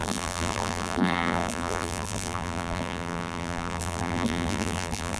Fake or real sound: fake